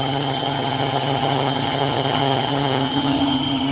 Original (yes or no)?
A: no